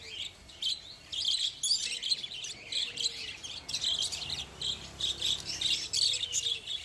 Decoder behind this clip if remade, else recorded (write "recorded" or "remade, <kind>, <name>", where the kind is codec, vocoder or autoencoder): recorded